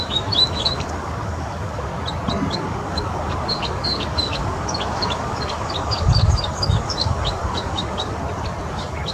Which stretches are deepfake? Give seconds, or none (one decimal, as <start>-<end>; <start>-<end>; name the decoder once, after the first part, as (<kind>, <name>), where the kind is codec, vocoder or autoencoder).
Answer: 0.0-1.9 (codec, DAC); 2.5-8.2; 8.7-9.1